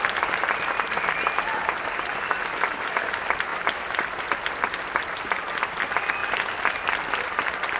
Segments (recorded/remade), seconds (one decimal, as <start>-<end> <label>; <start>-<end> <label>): 0.0-7.8 recorded